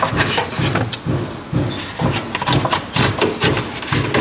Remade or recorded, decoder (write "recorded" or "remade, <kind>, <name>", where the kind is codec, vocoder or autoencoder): recorded